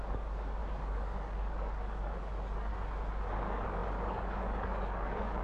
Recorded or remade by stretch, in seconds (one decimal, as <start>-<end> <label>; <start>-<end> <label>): 0.0-2.7 remade; 2.7-3.3 recorded; 3.3-5.4 remade